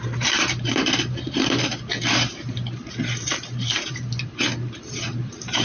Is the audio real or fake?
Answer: fake